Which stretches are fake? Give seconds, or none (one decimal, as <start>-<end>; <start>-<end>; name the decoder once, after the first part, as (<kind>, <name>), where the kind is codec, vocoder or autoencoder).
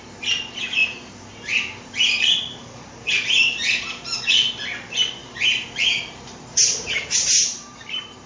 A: 0.8-3.7 (vocoder, BigVGAN v2); 5.2-8.3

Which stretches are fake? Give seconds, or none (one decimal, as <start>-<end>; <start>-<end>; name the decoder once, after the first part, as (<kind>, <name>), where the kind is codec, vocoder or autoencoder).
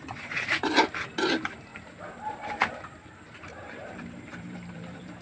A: 0.0-1.7 (vocoder, BigVGAN v2); 2.3-5.2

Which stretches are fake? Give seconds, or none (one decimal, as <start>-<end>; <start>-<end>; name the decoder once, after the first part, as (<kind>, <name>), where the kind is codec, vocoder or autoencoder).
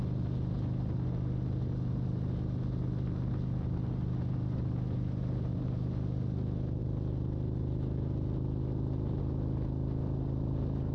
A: none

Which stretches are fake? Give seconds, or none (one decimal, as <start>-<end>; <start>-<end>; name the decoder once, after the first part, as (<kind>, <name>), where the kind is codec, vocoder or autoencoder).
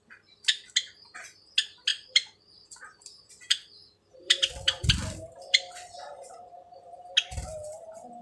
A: 1.9-2.5 (vocoder, BigVGAN v2); 3.8-6.5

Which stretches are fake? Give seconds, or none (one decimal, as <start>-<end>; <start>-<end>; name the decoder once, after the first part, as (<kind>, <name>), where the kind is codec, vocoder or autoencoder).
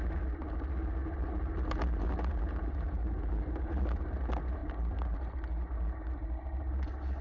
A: none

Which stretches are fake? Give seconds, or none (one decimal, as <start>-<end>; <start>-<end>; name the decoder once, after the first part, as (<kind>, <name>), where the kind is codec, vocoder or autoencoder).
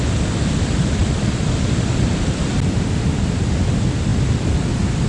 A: 1.0-3.4 (vocoder, BigVGAN v2)